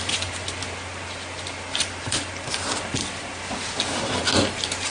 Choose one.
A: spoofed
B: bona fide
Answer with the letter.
B